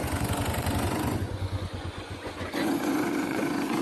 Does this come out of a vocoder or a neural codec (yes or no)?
yes